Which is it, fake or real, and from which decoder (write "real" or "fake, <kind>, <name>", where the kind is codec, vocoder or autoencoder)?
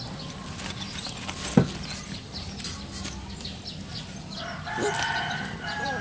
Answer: real